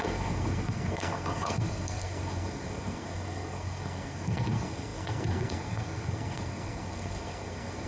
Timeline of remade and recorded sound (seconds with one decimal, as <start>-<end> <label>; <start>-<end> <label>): 0.0-7.9 remade